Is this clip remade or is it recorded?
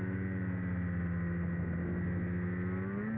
recorded